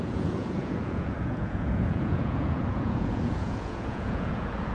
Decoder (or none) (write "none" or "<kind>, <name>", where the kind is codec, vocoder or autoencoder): vocoder, Vocos